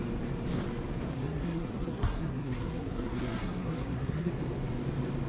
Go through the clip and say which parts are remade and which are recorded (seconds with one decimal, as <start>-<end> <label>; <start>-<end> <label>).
0.0-1.1 recorded; 1.1-4.3 remade; 4.3-5.3 recorded